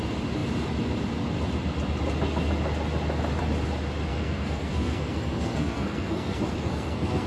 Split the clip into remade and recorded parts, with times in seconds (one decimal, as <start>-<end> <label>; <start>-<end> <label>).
0.0-4.1 recorded; 4.1-7.3 remade